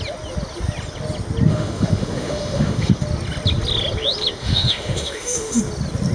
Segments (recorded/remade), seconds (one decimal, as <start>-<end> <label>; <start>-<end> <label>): 0.0-1.5 recorded; 1.5-2.9 remade; 2.9-4.4 recorded; 4.4-5.6 remade; 5.6-6.1 recorded